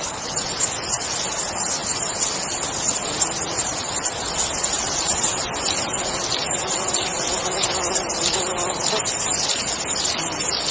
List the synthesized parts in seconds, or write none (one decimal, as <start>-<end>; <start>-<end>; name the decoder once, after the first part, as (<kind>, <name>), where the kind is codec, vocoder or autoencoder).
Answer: none